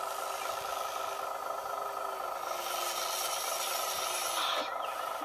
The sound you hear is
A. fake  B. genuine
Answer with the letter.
B